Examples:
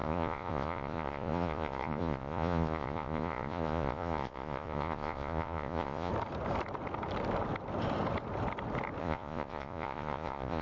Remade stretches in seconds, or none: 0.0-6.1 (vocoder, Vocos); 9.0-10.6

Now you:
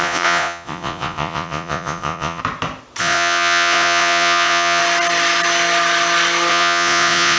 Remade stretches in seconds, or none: 0.0-2.4 (vocoder, Vocos); 3.0-4.8; 6.5-7.4

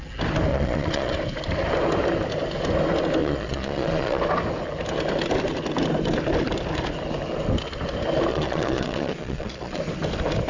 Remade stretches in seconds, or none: 0.5-1.1 (vocoder, Vocos); 3.2-4.2; 8.3-9.8

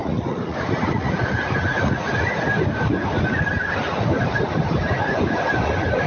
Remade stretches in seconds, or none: 0.0-2.4 (vocoder, Vocos)

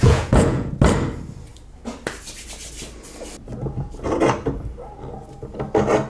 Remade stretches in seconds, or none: 0.0-0.7 (vocoder, Vocos)

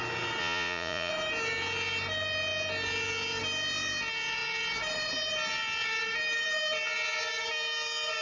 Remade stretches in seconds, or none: 0.4-1.1 (vocoder, Vocos)

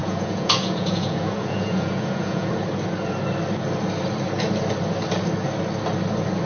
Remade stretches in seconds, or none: 0.0-2.5 (vocoder, Vocos)